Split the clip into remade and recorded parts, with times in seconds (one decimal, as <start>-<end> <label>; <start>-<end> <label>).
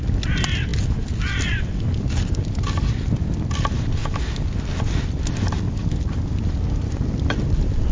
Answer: 0.0-7.9 recorded